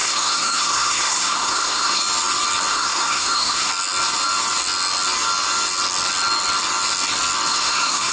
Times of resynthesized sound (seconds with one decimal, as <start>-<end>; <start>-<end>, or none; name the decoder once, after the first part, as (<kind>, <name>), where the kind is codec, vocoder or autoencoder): 0.0-2.0 (codec, SNAC); 2.7-3.7; 7.5-8.1